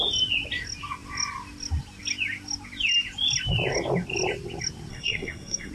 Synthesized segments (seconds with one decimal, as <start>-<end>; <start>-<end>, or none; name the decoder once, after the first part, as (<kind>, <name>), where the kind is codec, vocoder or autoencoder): 4.9-5.7 (codec, SNAC)